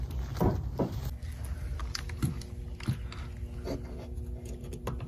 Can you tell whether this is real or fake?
real